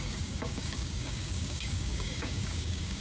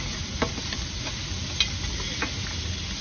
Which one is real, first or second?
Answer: second